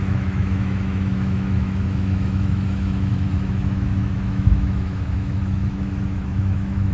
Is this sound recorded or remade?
remade